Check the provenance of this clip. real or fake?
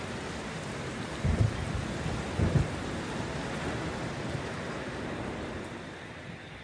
real